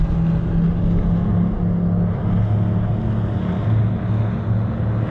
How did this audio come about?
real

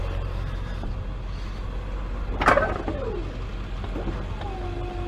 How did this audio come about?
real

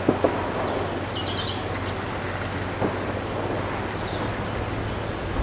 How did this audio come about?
real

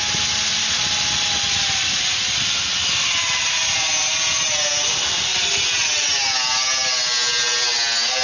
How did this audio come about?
real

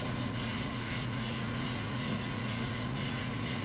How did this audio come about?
fake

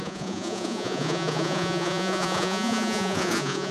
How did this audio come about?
fake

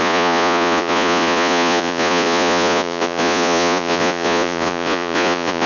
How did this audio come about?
fake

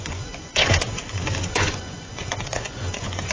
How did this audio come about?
fake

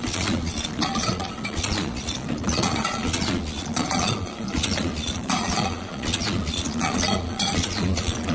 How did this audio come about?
fake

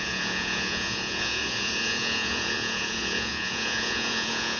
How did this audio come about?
fake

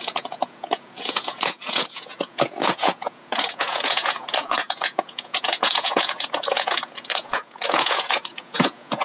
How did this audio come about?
fake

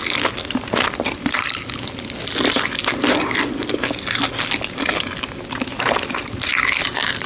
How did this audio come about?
real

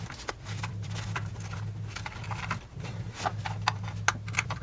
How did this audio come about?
real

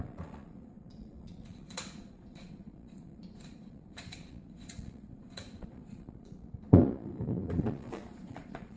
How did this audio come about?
fake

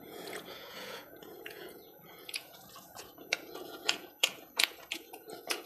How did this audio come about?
fake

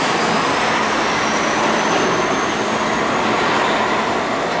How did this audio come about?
real